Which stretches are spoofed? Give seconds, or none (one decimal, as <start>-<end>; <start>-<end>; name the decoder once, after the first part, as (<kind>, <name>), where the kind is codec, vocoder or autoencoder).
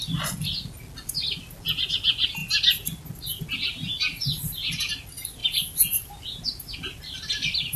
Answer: none